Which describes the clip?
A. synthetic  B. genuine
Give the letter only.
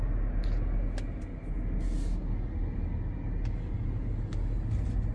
B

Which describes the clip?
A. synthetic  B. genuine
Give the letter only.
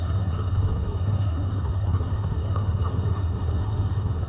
A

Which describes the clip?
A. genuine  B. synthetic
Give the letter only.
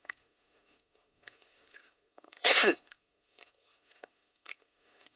B